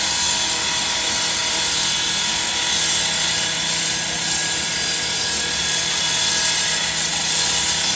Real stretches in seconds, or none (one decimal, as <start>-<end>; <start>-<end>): 0.0-8.0